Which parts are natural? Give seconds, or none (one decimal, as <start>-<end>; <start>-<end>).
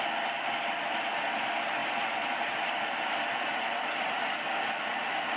0.0-1.8; 5.0-5.4